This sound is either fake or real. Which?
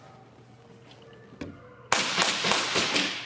real